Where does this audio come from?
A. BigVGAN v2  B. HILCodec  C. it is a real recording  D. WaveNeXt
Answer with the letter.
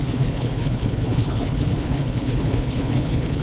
B